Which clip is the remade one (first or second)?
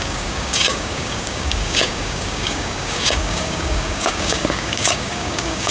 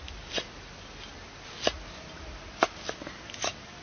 first